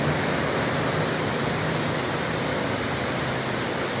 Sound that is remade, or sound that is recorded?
recorded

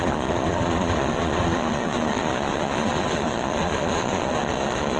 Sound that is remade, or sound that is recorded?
remade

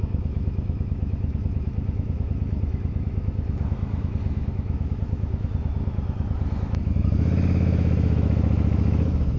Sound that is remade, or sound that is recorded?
remade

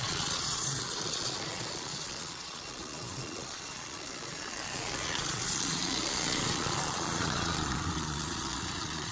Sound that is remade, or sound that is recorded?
remade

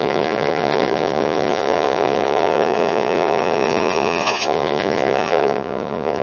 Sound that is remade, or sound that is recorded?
remade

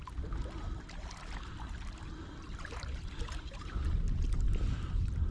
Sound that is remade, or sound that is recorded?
recorded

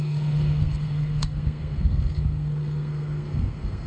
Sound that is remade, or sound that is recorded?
remade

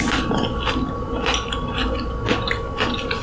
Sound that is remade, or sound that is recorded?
recorded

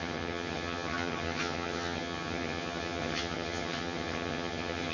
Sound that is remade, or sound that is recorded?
remade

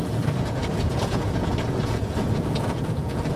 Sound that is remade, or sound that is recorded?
remade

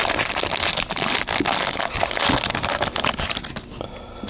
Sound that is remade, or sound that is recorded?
recorded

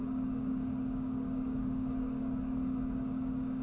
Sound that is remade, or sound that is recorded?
remade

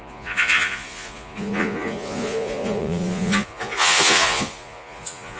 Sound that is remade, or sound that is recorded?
remade